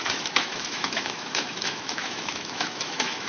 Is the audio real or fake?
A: fake